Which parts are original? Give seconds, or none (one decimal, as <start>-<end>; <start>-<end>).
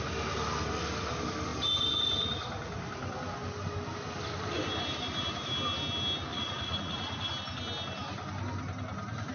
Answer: 0.0-6.3; 7.3-9.3